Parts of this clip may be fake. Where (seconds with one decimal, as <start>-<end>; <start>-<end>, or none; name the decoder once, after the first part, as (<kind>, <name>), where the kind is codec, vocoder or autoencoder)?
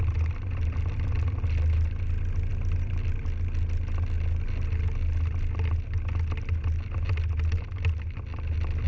none